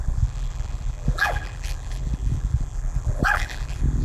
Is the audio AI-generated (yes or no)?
yes